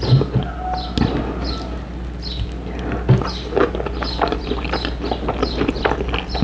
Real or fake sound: real